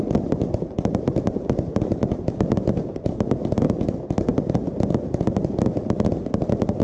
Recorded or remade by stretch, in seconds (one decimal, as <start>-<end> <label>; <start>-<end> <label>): 0.0-6.8 recorded